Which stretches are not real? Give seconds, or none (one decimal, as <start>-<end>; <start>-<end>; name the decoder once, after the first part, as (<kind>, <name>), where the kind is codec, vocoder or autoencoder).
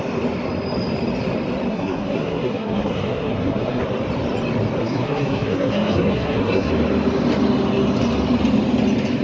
1.7-3.8 (codec, SNAC); 4.8-6.7